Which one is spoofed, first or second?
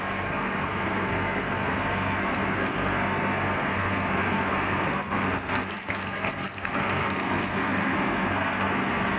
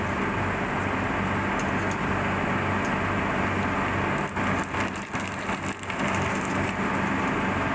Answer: first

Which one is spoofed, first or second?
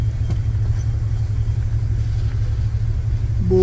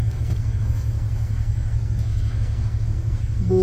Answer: second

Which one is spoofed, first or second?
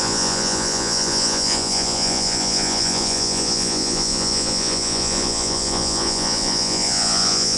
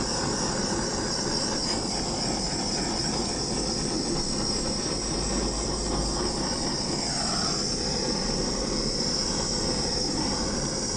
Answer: first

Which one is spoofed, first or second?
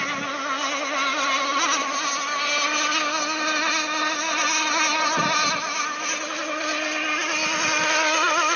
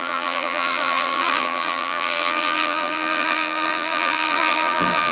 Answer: second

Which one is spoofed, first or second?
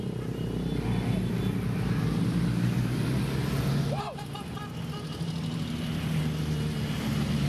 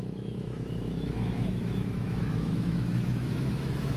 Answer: second